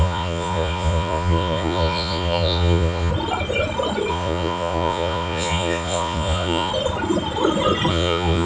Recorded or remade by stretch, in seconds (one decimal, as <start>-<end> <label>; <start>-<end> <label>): 0.0-3.1 remade; 3.1-4.1 recorded; 4.1-6.7 remade; 6.7-7.9 recorded; 7.9-8.4 remade